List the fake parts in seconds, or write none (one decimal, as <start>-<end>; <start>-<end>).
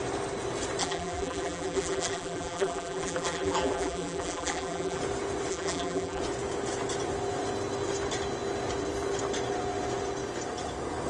0.8-5.0; 5.5-6.2